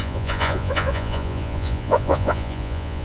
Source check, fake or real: fake